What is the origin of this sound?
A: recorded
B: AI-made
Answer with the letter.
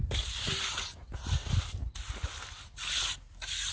A